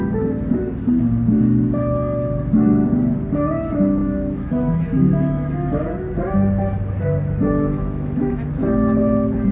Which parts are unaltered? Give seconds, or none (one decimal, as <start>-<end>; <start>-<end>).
0.0-4.0; 5.9-7.4; 8.5-9.5